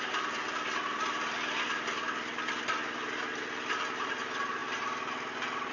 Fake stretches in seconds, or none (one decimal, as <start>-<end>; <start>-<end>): none